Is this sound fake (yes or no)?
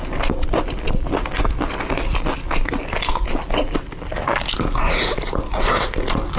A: no